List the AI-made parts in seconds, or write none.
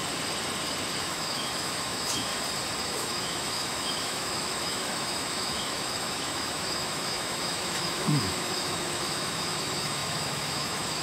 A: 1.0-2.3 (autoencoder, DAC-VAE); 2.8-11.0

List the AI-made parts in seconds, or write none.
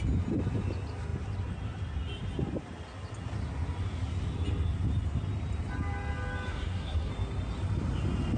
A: 6.5-7.1 (codec, SNAC)